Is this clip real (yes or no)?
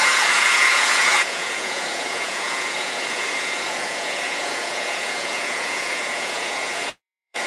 no